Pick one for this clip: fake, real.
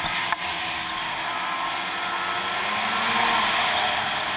real